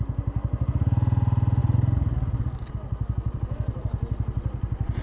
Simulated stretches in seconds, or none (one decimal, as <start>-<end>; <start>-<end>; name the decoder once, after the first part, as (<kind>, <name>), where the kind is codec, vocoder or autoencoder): none